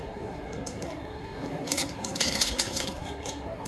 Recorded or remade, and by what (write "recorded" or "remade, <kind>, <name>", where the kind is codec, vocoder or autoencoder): remade, codec, SNAC